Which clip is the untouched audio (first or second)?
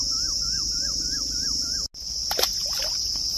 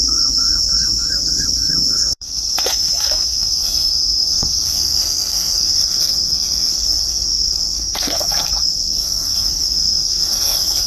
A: first